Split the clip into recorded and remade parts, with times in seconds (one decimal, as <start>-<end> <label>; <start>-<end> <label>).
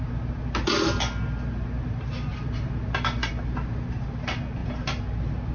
0.0-5.5 recorded